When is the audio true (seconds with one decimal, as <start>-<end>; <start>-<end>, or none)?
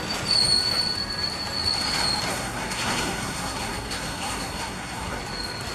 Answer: 0.0-2.3; 5.2-5.7